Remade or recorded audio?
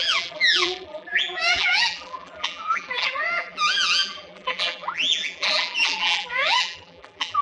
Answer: remade